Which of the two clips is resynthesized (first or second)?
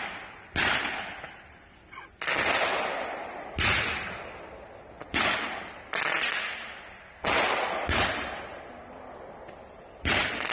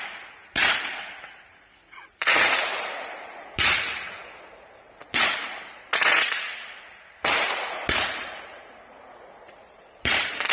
second